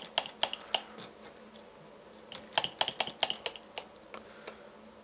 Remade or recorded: recorded